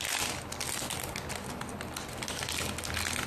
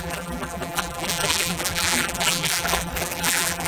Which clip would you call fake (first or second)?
second